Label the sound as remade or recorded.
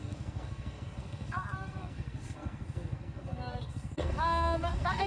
remade